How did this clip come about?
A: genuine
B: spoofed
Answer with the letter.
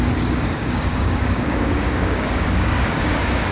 B